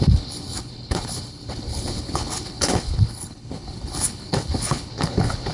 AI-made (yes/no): yes